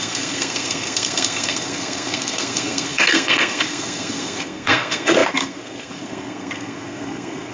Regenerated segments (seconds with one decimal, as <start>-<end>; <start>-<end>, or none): 0.0-7.5